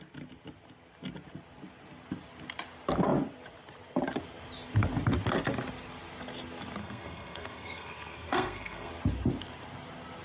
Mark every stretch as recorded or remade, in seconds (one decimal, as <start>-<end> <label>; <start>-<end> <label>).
0.0-6.8 recorded; 6.8-8.9 remade; 8.9-10.2 recorded